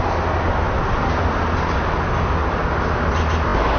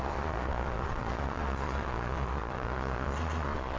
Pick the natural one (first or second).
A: first